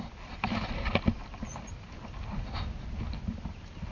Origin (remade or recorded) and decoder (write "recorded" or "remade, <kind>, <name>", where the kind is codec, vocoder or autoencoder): recorded